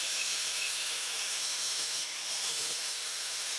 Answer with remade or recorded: remade